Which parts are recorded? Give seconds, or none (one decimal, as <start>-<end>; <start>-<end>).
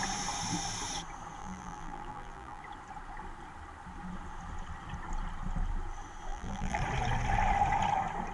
0.0-1.4; 2.6-6.3; 6.8-8.3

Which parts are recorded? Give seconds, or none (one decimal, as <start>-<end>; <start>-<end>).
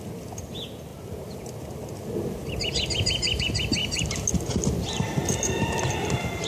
0.0-6.5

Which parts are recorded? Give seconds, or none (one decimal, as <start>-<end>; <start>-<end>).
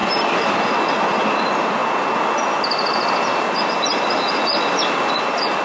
0.0-5.6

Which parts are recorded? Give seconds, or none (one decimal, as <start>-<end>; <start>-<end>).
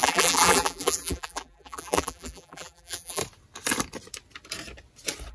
3.2-5.3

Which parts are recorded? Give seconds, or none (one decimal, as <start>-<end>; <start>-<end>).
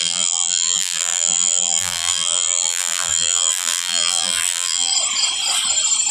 4.9-6.1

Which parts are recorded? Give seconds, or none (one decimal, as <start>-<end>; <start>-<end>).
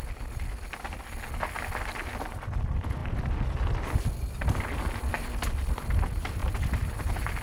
0.0-7.4